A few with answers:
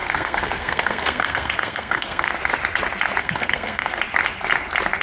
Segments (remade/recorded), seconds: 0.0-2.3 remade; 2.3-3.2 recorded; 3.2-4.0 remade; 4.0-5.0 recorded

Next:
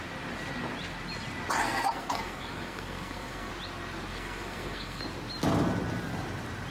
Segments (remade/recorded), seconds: 0.0-1.6 recorded; 1.6-3.5 remade; 3.5-4.1 recorded; 4.1-5.0 remade; 5.0-6.7 recorded

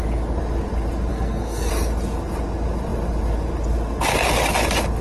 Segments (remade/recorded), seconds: 0.0-1.1 recorded; 1.1-1.7 remade; 1.7-5.0 recorded

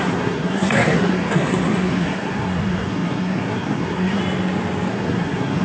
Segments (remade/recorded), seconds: 0.0-4.2 remade; 4.2-4.9 recorded; 4.9-5.6 remade